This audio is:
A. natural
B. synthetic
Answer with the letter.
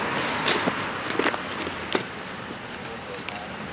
A